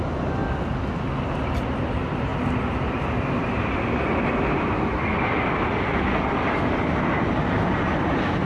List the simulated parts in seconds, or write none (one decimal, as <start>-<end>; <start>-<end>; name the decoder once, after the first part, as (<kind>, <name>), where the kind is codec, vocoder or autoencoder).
none